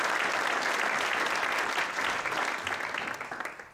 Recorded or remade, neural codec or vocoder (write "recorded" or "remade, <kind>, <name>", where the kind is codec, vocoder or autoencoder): recorded